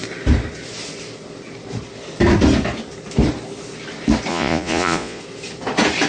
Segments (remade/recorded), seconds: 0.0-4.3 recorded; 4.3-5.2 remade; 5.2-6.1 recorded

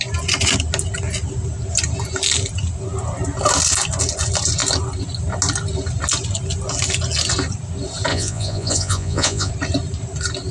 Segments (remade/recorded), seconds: 0.0-8.1 recorded; 8.1-9.5 remade; 9.5-10.5 recorded

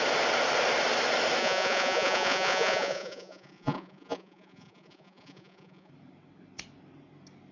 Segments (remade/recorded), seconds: 0.0-1.4 recorded; 1.4-5.9 remade; 5.9-7.5 recorded

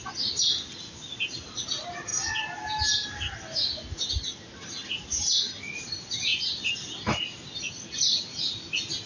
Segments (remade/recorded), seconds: 0.0-9.1 recorded

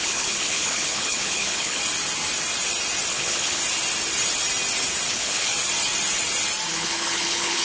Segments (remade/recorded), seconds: 0.0-1.8 remade; 1.8-3.1 recorded; 3.1-3.6 remade; 3.6-5.1 recorded; 5.1-5.5 remade; 5.5-6.7 recorded; 6.7-7.6 remade

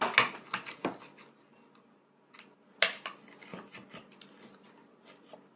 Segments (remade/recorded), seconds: 0.0-5.6 recorded

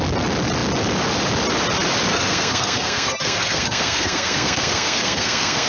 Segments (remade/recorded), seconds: 0.0-2.1 recorded; 2.1-5.7 remade

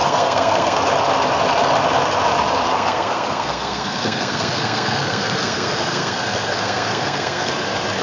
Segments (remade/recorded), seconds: 0.0-0.8 remade; 0.8-2.7 recorded; 2.7-7.5 remade; 7.5-8.0 recorded